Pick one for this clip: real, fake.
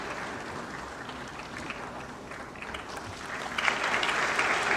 real